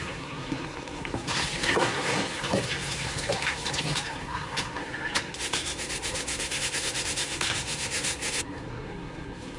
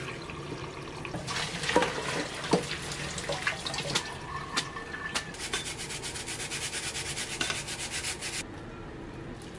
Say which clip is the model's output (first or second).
first